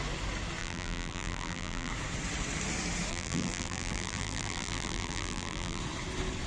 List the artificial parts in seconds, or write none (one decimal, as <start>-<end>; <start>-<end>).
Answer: 0.6-1.9; 3.1-5.8